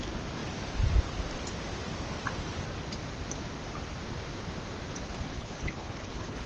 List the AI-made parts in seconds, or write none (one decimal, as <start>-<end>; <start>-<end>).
5.3-6.5